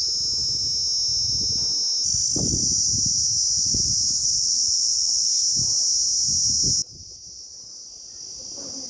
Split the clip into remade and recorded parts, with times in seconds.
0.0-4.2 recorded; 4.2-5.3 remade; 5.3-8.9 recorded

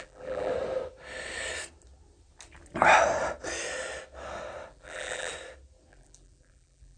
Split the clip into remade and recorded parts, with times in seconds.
0.0-0.5 remade; 0.5-4.7 recorded; 4.7-5.3 remade; 5.3-5.9 recorded; 5.9-7.0 remade

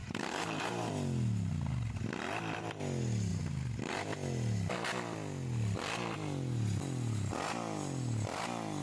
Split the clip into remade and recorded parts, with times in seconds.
0.0-0.9 remade; 0.9-3.3 recorded; 3.3-3.9 remade; 3.9-8.8 recorded

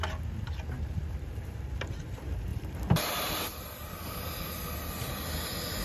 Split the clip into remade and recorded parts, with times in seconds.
0.0-2.5 recorded; 2.5-4.2 remade; 4.2-5.8 recorded

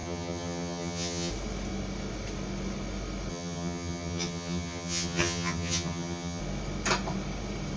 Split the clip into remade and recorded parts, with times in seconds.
0.0-1.3 remade; 1.3-3.3 recorded; 3.3-6.4 remade; 6.4-7.8 recorded

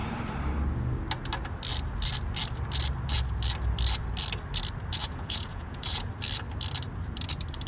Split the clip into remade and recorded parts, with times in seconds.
0.0-5.0 recorded; 5.0-6.1 remade; 6.1-7.7 recorded